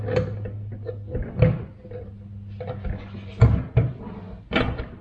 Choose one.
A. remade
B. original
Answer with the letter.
B